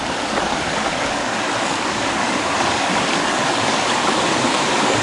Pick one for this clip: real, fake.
fake